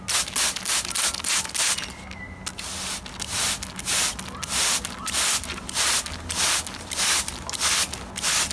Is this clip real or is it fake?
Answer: real